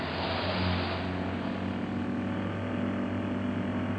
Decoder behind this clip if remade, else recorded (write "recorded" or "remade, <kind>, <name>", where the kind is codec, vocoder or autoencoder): recorded